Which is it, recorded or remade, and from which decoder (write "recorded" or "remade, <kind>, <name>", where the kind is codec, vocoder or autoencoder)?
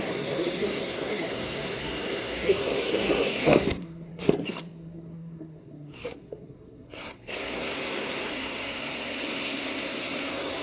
remade, codec, SNAC